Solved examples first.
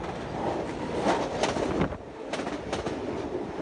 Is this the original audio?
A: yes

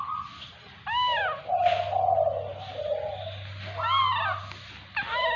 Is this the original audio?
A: yes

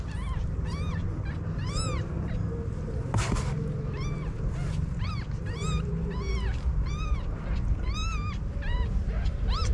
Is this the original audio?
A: yes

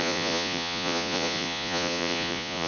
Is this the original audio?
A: no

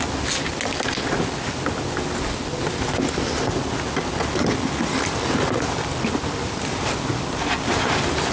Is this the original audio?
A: yes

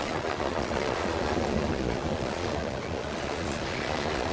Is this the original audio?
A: no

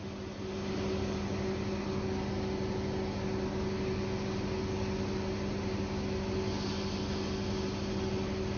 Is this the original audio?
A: yes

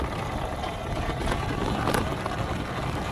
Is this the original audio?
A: yes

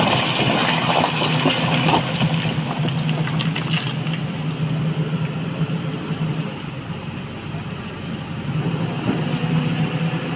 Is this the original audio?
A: yes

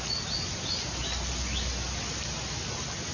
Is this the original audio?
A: yes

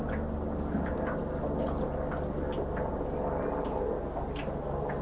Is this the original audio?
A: yes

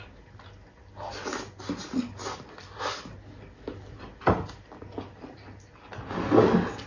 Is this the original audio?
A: yes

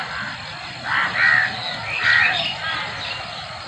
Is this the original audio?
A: yes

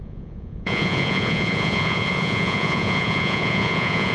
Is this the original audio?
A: no